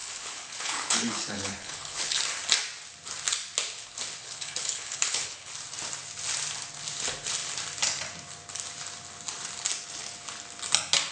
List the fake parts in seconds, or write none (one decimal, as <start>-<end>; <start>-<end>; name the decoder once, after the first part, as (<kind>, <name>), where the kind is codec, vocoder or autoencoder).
0.0-2.2 (codec, HILCodec); 4.2-5.5